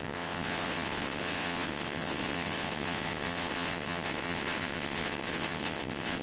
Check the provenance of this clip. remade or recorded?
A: remade